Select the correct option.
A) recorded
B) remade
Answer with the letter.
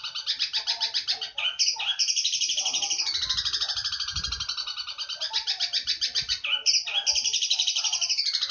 A